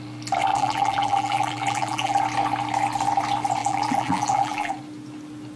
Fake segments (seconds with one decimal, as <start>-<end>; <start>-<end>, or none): 0.5-2.2; 3.6-4.7